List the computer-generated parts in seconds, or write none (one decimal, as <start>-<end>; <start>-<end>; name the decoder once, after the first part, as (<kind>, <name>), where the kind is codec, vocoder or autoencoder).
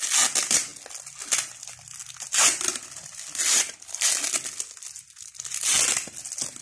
none